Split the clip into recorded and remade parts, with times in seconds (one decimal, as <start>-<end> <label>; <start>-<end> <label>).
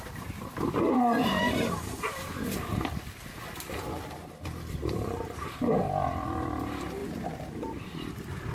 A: 0.0-8.5 remade